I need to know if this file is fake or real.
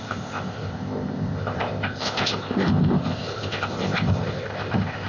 fake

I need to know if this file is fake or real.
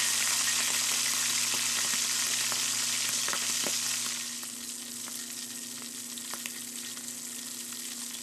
real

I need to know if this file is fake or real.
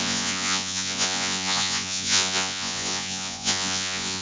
fake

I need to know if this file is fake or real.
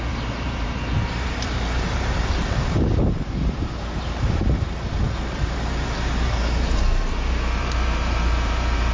fake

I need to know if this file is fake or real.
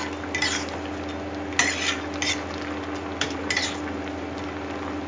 real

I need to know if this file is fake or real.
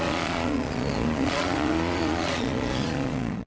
fake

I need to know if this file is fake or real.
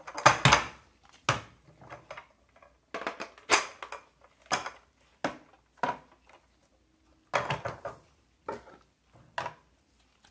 real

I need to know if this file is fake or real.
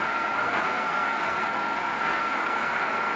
fake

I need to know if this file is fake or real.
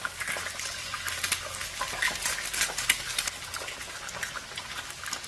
real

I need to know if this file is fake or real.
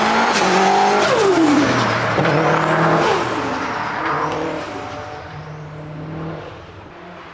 real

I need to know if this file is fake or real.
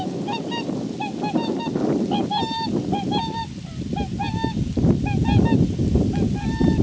real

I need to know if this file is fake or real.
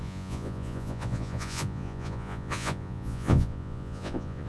fake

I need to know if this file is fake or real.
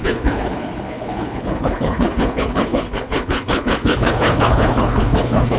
fake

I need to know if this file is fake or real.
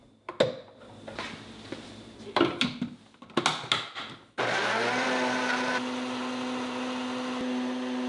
real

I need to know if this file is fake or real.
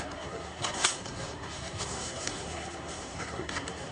fake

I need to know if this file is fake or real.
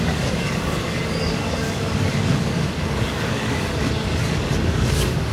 fake